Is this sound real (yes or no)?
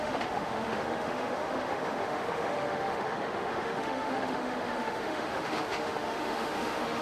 no